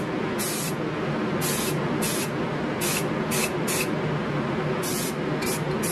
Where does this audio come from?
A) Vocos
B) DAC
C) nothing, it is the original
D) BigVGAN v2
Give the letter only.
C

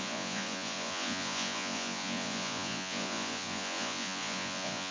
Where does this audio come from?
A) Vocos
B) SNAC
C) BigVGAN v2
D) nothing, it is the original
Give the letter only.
A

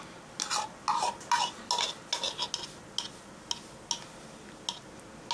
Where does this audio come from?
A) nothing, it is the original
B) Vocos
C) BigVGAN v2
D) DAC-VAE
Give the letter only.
A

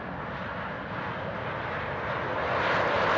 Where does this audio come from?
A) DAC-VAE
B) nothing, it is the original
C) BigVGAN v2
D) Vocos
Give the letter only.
B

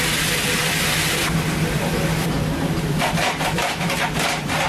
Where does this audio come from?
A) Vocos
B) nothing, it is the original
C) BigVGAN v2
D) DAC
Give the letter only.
C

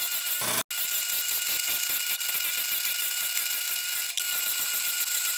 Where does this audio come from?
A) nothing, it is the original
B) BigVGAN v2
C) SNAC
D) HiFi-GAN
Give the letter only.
A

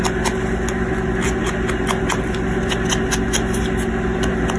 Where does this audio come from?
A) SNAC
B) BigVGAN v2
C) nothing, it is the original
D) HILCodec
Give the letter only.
C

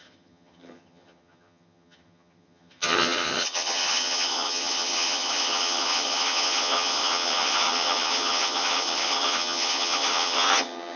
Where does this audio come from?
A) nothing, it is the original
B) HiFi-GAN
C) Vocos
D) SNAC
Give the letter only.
B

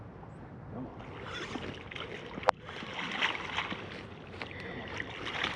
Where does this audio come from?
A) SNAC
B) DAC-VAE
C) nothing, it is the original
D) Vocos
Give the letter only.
C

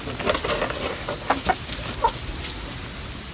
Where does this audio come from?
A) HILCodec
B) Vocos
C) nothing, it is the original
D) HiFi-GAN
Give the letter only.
C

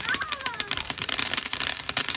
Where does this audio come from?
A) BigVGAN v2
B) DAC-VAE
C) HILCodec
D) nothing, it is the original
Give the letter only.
A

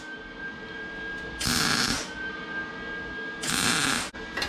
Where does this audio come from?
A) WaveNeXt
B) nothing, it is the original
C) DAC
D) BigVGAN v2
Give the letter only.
B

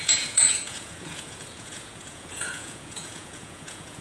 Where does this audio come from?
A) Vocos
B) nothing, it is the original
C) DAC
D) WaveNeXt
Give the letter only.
A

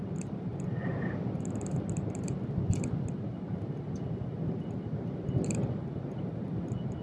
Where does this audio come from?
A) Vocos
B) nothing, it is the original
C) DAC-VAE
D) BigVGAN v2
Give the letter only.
B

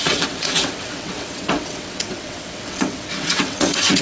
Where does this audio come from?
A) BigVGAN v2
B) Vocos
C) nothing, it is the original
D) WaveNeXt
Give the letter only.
D